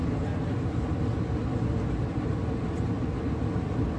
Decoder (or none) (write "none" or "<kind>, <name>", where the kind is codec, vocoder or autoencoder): none